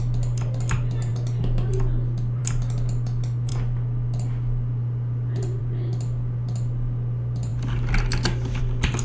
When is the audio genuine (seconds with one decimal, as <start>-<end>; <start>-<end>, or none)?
0.0-9.0